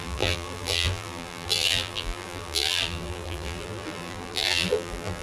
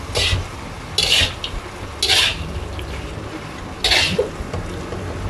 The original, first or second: second